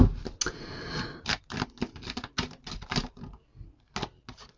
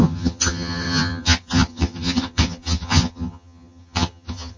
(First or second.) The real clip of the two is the first